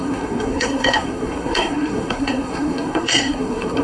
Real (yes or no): no